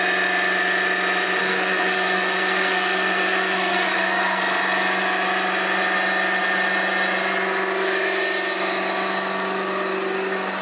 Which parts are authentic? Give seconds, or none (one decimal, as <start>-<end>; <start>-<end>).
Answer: 0.0-1.4; 4.4-10.6